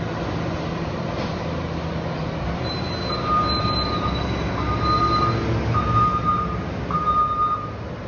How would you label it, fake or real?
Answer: real